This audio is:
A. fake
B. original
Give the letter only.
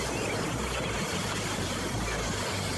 B